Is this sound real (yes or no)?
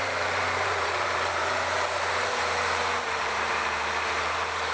no